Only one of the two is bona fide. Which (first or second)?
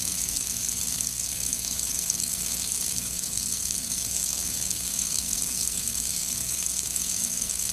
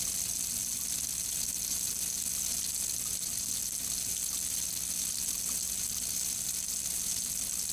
second